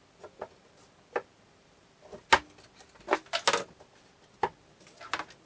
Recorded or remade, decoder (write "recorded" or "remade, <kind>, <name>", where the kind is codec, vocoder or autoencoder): recorded